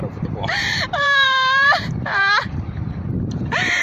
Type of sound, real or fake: fake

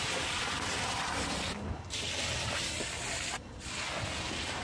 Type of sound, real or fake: real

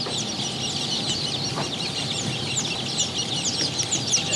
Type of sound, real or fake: real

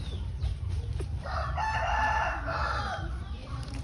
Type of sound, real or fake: fake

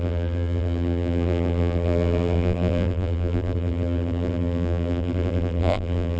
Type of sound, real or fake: fake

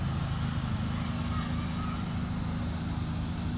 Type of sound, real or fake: real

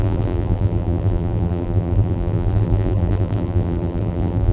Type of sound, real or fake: fake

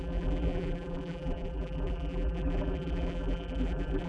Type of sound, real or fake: fake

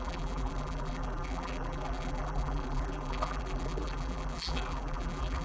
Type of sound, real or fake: fake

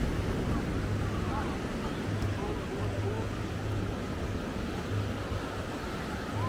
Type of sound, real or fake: real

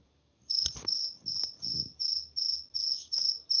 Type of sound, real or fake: real